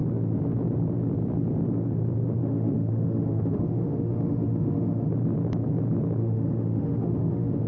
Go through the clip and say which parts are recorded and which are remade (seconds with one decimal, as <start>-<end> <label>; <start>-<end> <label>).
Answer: 0.0-2.4 recorded; 2.4-5.1 remade; 5.1-6.2 recorded; 6.2-7.7 remade